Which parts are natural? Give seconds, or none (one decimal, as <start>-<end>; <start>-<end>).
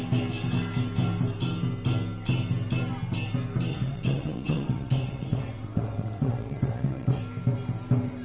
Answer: 0.0-3.7; 7.2-8.2